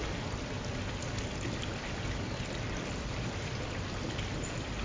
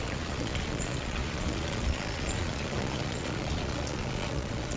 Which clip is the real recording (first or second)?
first